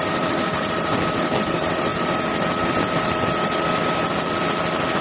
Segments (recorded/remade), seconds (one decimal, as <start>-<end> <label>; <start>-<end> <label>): 0.0-5.0 recorded